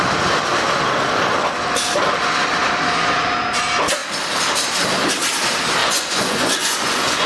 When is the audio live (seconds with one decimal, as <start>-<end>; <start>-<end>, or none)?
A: 0.0-5.8